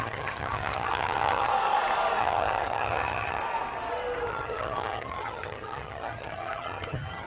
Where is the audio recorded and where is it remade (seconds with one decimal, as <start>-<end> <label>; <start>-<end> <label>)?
0.0-1.5 remade; 1.5-2.2 recorded; 2.2-3.4 remade; 3.4-4.3 recorded; 4.3-7.3 remade